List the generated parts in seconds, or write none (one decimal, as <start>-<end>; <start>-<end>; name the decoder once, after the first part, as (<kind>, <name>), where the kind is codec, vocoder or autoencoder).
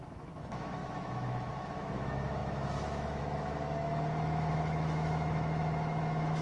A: 0.0-6.4 (autoencoder, DAC-VAE)